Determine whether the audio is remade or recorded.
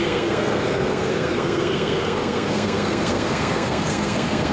remade